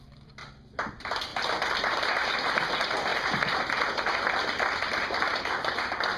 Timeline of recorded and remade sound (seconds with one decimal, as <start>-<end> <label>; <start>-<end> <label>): 0.0-0.4 remade; 0.4-0.9 recorded; 0.9-3.1 remade; 3.1-3.7 recorded; 3.7-6.2 remade